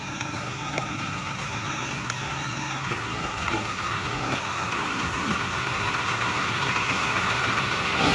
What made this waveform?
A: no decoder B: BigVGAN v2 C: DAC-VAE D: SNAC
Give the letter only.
D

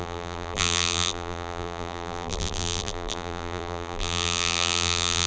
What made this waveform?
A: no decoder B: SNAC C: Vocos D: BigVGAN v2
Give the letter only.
D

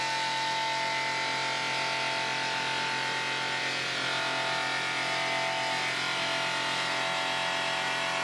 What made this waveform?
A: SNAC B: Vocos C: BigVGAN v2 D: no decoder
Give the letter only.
D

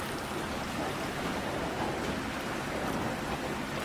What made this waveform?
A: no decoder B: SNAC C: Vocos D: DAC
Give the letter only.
A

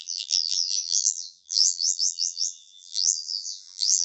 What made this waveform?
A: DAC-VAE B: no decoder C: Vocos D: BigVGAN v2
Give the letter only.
D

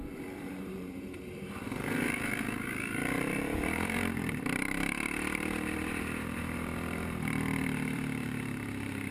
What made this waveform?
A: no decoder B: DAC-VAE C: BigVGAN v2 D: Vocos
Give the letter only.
C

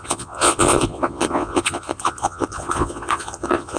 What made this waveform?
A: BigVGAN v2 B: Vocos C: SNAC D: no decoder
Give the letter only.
B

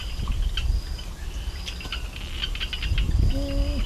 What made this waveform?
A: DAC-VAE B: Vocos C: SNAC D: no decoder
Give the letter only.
D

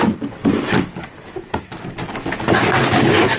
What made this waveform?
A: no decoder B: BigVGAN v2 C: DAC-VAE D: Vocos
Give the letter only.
A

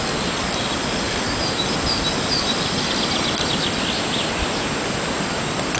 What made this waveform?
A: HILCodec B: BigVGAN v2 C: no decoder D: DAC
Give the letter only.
C